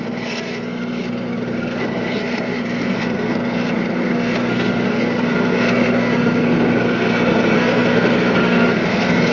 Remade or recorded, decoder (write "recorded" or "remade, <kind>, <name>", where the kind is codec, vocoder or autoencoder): remade, codec, SNAC